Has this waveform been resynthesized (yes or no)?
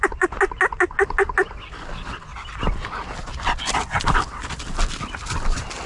no